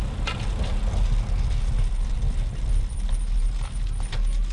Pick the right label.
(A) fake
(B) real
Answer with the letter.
B